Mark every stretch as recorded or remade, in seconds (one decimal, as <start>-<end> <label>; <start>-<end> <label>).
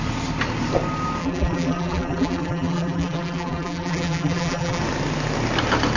0.0-1.2 recorded; 1.2-4.8 remade; 4.8-6.0 recorded